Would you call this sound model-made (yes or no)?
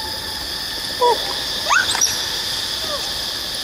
no